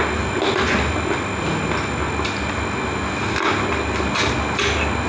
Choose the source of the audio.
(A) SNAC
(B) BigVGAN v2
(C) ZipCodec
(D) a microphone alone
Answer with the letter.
D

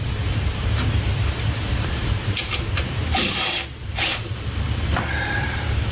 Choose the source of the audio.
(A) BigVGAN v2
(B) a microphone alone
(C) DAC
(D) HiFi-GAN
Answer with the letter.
A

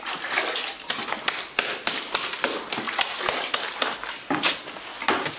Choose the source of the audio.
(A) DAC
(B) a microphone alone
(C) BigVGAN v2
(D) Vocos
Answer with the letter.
B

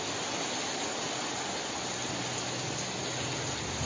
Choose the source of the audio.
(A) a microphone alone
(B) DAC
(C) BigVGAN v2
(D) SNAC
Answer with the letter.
A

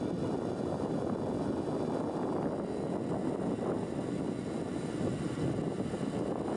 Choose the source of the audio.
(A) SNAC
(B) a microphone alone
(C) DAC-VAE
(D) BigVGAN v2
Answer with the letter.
B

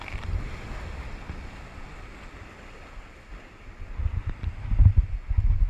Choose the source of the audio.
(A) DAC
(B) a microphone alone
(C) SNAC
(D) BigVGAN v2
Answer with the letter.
B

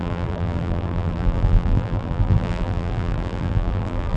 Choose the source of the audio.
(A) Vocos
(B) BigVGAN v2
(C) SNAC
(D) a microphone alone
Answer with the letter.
B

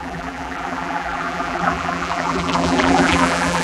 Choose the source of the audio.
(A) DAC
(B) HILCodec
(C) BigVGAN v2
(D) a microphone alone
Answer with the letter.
C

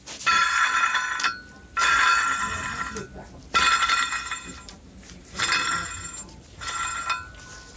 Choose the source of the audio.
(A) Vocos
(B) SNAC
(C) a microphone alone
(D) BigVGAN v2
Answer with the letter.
C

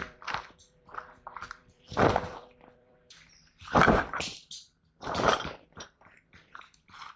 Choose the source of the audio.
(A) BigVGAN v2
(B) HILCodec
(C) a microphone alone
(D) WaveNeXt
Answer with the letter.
A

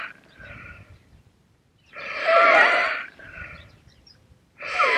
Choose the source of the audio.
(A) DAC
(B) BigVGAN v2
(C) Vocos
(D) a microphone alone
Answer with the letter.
B